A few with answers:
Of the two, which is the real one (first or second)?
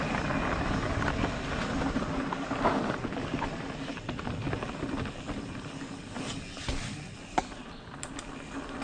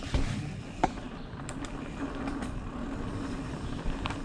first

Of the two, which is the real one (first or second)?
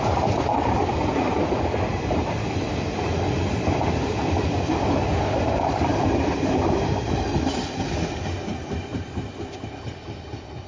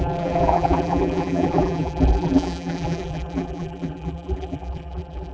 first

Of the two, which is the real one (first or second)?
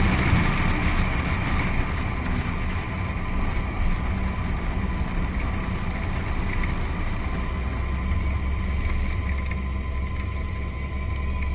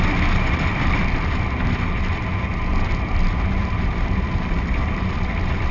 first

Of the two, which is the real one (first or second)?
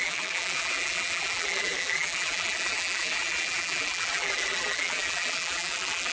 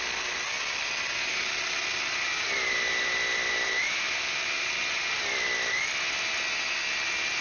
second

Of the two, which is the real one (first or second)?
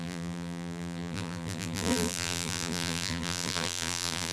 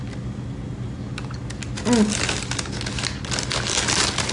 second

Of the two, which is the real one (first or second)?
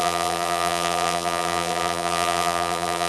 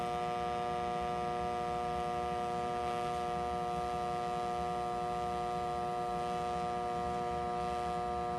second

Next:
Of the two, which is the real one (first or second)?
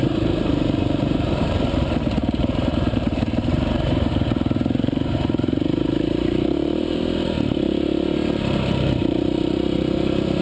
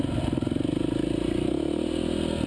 second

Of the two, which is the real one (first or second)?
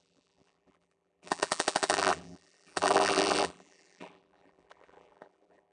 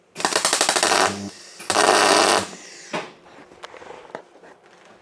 second